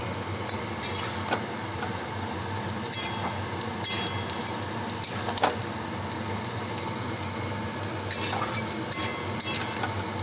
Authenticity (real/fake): real